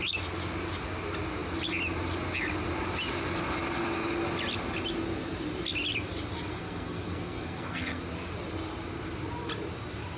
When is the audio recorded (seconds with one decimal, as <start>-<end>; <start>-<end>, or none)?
0.0-6.5; 8.0-10.2